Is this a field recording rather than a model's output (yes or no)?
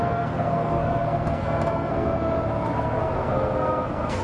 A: no